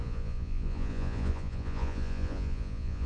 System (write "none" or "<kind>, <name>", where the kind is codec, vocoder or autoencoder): vocoder, Vocos